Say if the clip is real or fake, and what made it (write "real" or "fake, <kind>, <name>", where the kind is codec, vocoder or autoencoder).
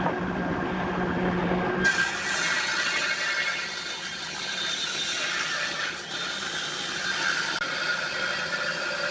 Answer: real